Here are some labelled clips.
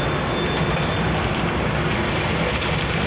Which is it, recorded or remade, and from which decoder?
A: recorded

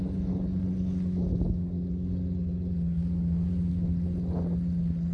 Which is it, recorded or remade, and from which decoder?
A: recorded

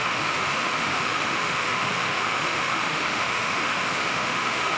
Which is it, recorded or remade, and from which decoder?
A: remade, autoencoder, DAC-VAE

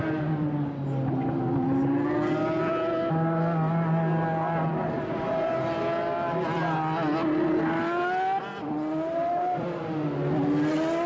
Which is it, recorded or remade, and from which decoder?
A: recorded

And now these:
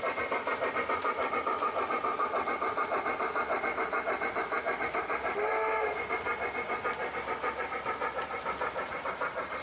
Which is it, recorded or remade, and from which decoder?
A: recorded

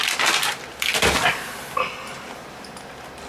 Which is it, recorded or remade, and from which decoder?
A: recorded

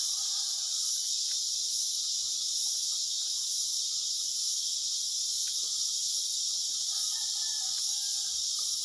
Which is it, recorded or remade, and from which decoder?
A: recorded